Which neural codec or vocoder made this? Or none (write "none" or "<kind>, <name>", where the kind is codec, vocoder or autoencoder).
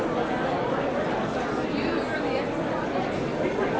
vocoder, BigVGAN v2